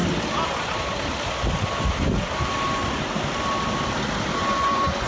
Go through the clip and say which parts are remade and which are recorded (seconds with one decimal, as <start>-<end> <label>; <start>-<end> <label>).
0.0-4.4 recorded; 4.4-5.1 remade